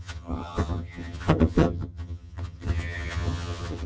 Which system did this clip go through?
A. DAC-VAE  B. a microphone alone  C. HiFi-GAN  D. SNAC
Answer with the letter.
C